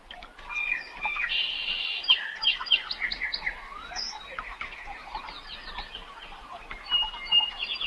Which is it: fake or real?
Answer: real